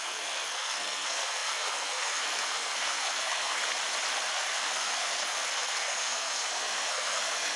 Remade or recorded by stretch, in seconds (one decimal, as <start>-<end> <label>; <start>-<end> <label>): 0.0-3.6 remade; 3.6-4.3 recorded; 4.3-7.6 remade